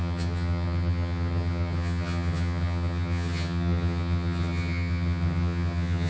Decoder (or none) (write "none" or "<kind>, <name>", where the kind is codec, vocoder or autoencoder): vocoder, HiFi-GAN